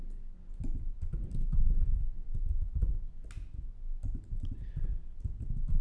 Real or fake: real